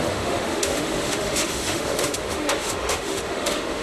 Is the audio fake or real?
fake